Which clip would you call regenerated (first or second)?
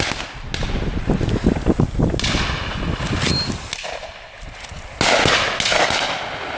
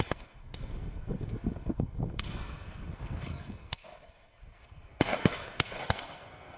second